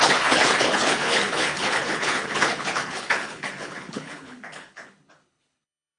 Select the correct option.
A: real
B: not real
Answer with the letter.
B